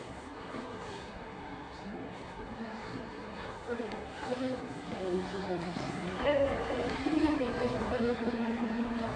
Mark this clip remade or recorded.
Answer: remade